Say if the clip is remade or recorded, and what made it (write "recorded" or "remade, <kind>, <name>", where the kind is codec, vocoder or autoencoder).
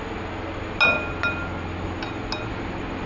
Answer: recorded